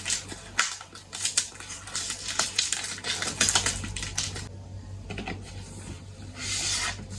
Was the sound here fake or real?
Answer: real